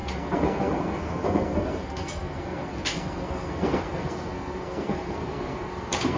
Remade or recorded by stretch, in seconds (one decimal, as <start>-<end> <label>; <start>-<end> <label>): 0.0-6.2 remade